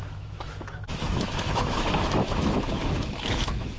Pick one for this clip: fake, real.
fake